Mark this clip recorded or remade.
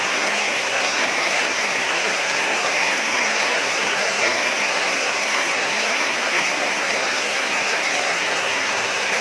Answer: remade